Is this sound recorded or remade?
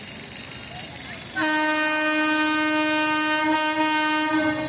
recorded